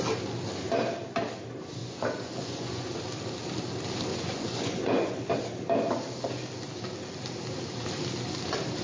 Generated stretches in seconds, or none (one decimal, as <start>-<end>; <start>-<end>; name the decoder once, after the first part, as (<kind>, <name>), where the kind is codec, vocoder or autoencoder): 1.8-2.9 (vocoder, Vocos); 4.1-5.3